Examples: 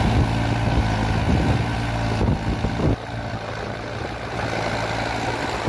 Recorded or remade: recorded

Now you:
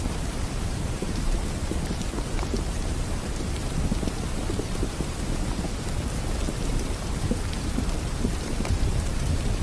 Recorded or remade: remade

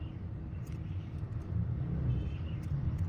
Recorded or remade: remade